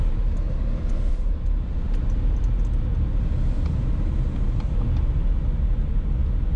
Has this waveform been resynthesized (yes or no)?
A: no